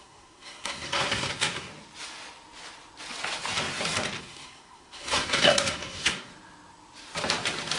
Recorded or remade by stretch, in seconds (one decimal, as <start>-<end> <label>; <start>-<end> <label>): 0.0-1.7 remade; 1.7-4.2 recorded; 4.2-6.3 remade; 6.3-7.8 recorded